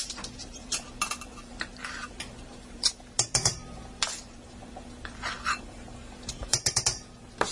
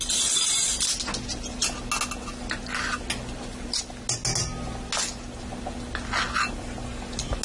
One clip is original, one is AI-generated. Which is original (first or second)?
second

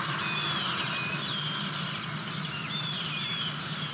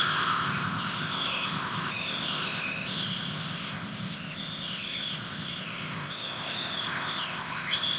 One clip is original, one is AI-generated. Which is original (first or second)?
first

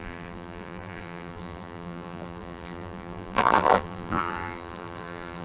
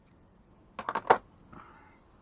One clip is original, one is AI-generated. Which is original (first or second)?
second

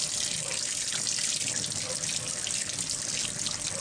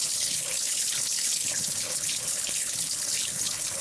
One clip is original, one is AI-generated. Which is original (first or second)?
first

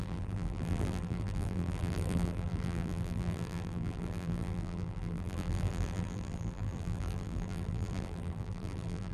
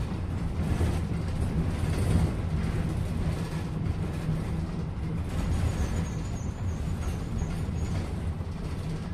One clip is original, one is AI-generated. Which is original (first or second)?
second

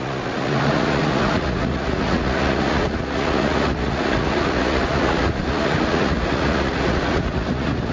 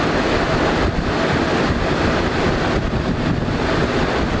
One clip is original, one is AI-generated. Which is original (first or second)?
second